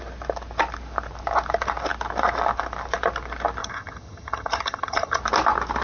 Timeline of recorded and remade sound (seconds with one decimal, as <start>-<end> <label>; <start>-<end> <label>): 0.0-3.6 recorded; 3.6-5.2 remade; 5.2-5.8 recorded